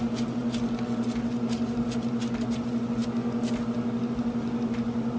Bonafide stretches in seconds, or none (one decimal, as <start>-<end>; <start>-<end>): 0.0-5.2